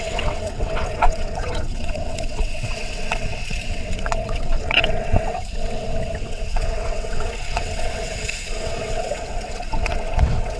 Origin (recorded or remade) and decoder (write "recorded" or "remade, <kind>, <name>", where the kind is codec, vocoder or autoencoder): remade, vocoder, WaveNeXt